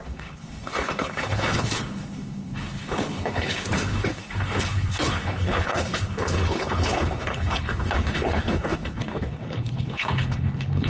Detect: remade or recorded remade